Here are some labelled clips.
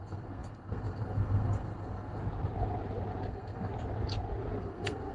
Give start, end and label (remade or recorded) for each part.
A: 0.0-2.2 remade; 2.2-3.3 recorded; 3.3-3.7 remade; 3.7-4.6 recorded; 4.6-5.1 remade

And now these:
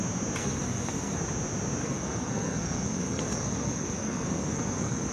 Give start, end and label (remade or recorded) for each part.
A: 0.0-0.4 recorded; 0.4-1.2 remade; 1.2-1.8 recorded; 1.8-5.1 remade

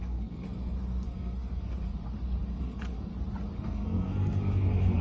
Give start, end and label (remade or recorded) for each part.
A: 0.0-1.9 remade; 1.9-2.6 recorded; 2.6-3.1 remade; 3.1-3.6 recorded; 3.6-5.0 remade

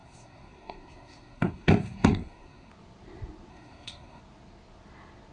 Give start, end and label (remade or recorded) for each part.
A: 0.0-2.7 remade; 2.7-3.5 recorded; 3.5-4.2 remade; 4.2-5.3 recorded